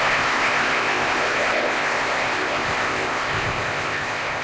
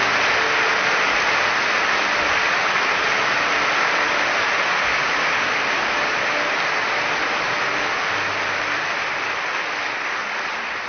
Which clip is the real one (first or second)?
second